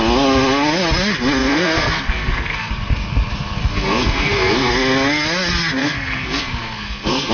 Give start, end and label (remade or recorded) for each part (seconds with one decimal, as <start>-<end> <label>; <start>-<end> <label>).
0.0-1.4 recorded; 1.4-2.7 remade; 2.7-3.6 recorded; 3.6-4.7 remade; 4.7-5.8 recorded; 5.8-7.3 remade